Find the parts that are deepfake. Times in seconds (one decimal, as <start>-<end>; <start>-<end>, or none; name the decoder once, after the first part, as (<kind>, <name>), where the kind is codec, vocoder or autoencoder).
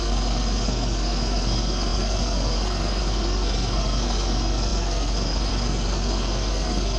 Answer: 0.0-7.0 (codec, SNAC)